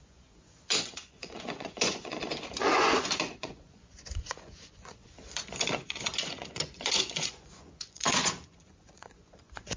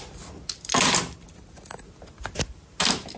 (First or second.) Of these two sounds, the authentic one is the second